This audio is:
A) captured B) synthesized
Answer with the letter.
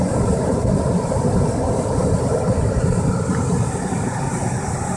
A